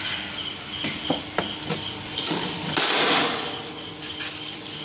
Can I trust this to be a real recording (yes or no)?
yes